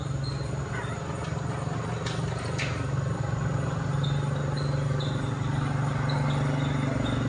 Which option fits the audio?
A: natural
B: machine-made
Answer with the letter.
A